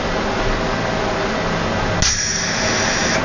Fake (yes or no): no